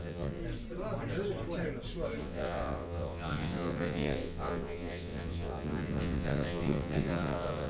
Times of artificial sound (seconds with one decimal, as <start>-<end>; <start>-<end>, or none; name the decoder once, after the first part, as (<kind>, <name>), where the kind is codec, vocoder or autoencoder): 0.0-0.4 (vocoder, WaveNeXt); 2.2-7.7